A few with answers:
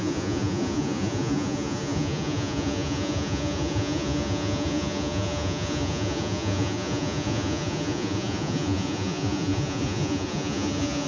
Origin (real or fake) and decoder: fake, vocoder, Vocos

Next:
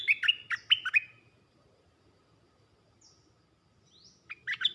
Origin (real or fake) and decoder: real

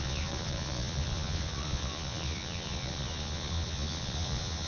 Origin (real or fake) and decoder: fake, vocoder, Vocos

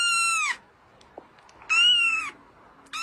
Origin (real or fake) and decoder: real